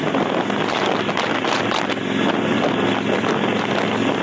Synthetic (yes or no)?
no